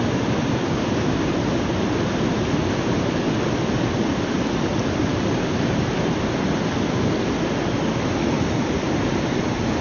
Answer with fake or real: real